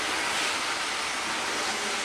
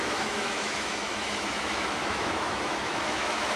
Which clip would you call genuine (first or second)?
first